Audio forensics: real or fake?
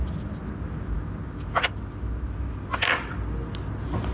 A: real